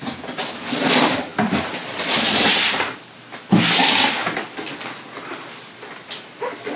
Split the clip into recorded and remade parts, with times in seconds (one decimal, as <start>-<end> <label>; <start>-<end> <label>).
0.0-6.8 recorded